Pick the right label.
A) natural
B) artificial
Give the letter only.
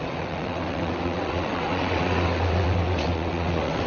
B